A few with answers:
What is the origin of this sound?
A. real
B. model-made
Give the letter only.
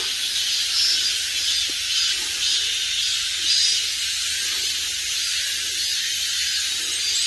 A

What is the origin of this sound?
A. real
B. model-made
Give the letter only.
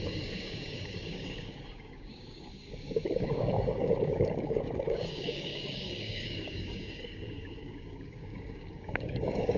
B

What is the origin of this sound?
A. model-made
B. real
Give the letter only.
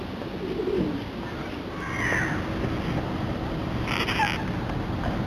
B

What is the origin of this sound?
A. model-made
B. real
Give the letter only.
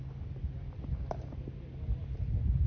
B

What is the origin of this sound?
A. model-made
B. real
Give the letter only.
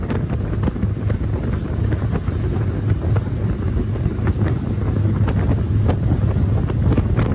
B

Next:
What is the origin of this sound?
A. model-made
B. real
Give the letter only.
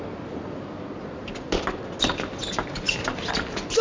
B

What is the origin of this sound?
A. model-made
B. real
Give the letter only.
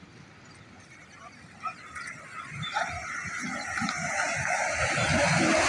B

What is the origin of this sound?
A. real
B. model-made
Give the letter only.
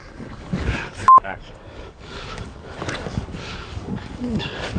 B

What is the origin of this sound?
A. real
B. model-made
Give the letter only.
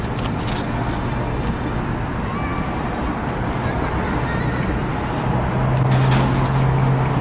A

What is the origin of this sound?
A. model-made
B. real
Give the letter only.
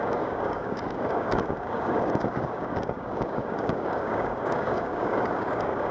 A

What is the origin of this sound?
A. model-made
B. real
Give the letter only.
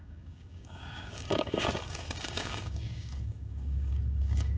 A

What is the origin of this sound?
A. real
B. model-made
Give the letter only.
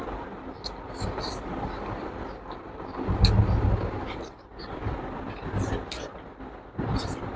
A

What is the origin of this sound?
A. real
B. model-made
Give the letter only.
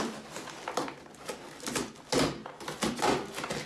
A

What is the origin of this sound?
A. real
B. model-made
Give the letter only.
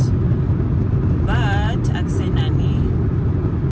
A